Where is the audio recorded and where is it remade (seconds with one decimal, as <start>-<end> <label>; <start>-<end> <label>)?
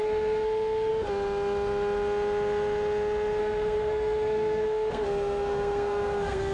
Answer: 0.0-0.9 remade; 0.9-3.4 recorded; 3.4-6.5 remade